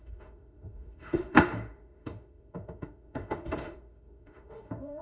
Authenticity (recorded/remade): remade